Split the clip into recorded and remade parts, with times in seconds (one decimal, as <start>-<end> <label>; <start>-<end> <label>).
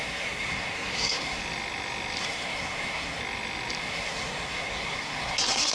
0.0-1.4 remade; 1.4-2.2 recorded; 2.2-3.2 remade; 3.2-3.8 recorded; 3.8-5.7 remade